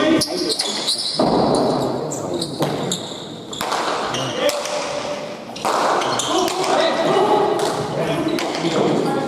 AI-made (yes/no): no